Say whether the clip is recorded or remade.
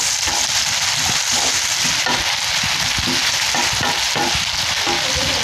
recorded